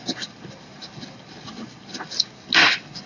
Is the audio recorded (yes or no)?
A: yes